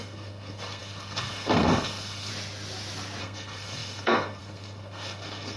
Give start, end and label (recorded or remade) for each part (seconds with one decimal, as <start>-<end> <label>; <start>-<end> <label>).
0.0-2.3 remade; 2.3-3.2 recorded; 3.2-5.6 remade